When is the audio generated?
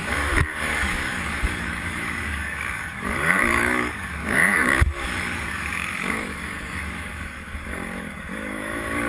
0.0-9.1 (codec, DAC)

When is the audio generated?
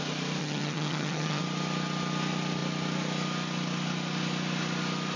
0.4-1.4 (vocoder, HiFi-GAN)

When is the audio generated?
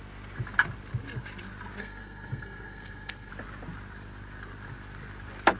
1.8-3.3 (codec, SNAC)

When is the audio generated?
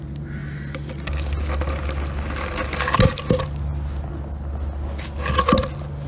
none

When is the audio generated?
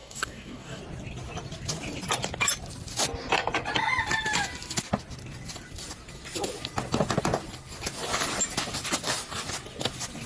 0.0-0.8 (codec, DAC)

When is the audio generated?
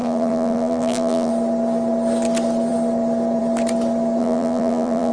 0.0-1.3 (vocoder, BigVGAN v2); 4.2-5.1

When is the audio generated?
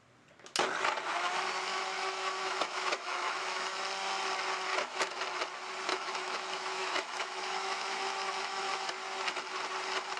1.7-3.8 (autoencoder, DAC-VAE); 4.7-5.2; 5.9-8.9